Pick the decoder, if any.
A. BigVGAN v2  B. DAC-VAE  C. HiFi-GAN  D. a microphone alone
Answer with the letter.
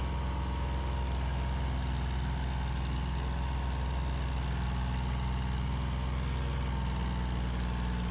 D